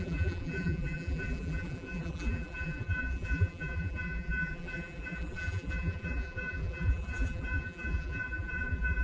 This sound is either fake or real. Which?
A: fake